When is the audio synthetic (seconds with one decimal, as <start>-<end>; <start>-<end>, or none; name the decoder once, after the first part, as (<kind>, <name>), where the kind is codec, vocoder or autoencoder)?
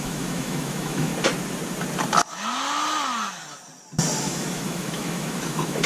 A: 0.0-1.1 (autoencoder, DAC-VAE); 4.2-5.9